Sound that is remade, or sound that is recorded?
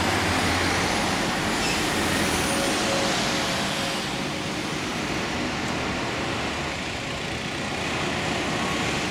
recorded